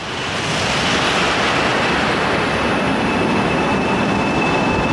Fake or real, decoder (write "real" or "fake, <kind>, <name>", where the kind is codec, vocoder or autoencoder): real